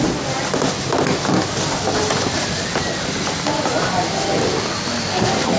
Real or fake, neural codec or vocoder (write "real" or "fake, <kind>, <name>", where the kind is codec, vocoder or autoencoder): real